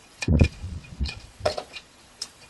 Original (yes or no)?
no